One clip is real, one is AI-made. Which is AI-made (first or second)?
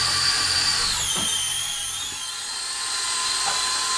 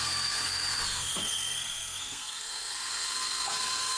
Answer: second